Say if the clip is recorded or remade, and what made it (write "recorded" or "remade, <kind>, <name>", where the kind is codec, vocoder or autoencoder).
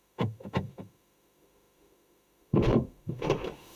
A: remade, autoencoder, DAC-VAE